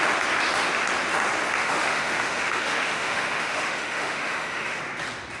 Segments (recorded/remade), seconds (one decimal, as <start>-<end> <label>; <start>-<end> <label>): 0.0-1.6 recorded; 1.6-4.8 remade; 4.8-5.4 recorded